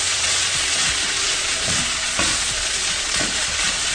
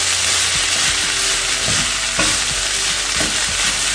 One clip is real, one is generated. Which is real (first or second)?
second